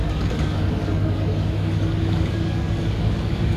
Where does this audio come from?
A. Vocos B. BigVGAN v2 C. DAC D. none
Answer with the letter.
C